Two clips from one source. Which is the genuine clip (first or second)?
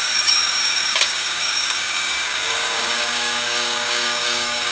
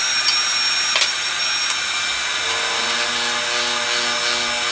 second